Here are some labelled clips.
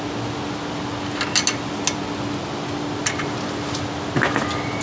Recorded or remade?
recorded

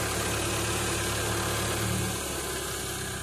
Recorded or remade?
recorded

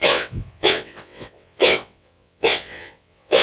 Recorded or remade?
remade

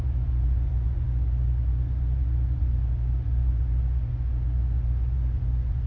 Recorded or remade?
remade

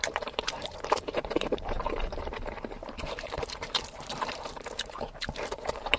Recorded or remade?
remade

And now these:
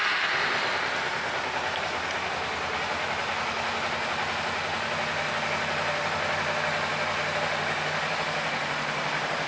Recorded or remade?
recorded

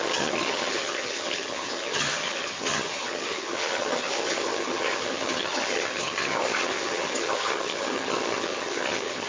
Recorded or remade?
remade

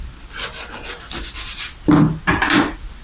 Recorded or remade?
recorded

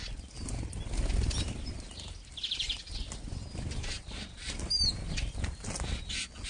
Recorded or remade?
recorded